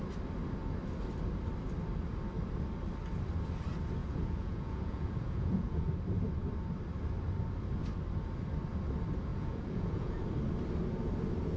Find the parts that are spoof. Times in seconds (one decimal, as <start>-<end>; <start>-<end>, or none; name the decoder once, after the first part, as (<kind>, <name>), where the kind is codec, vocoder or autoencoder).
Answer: 4.0-5.9 (vocoder, Vocos); 9.3-10.2